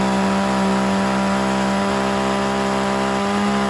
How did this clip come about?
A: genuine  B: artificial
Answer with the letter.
A